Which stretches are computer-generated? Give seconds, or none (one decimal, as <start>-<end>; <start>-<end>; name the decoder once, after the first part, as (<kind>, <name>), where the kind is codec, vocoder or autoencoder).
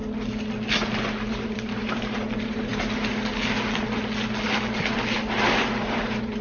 1.3-2.7 (vocoder, BigVGAN v2); 5.8-6.4